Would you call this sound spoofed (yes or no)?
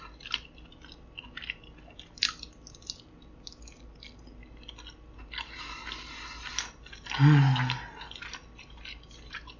no